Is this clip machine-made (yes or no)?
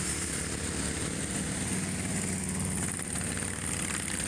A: no